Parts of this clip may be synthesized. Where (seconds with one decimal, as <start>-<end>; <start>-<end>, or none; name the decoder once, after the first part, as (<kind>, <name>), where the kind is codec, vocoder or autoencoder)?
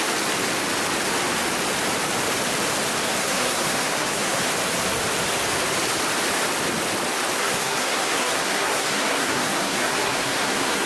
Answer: 3.2-4.4 (codec, SNAC); 7.4-10.9